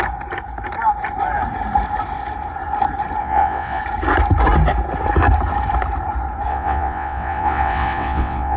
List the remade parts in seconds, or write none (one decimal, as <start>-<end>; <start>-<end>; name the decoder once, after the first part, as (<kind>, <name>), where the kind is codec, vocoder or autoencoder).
3.2-3.8 (vocoder, WaveNeXt); 6.5-8.6